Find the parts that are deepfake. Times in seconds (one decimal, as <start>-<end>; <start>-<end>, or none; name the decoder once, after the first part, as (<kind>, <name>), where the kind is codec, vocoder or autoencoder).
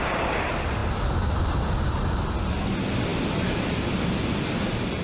none